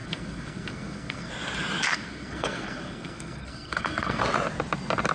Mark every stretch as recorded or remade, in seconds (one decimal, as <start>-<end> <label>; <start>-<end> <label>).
0.0-1.3 remade; 1.3-1.9 recorded; 1.9-4.2 remade; 4.2-5.1 recorded

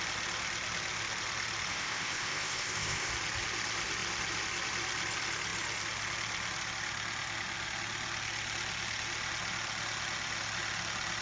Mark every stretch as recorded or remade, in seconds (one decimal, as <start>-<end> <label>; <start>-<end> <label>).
0.0-1.7 recorded; 1.7-3.1 remade; 3.1-11.2 recorded